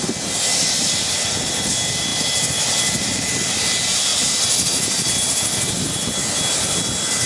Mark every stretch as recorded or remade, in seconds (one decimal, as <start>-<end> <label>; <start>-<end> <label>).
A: 0.0-0.5 recorded; 0.5-1.7 remade; 1.7-7.3 recorded